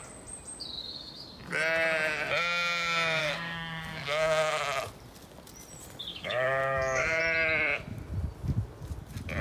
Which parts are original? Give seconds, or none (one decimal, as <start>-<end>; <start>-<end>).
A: 0.0-0.8; 1.4-3.2; 4.6-6.1; 7.2-9.4